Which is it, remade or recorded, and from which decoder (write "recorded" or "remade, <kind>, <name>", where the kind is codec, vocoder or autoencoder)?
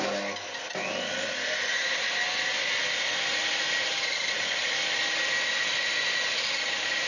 recorded